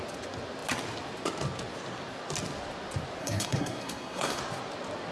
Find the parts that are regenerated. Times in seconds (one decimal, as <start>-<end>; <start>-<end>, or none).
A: 3.2-4.4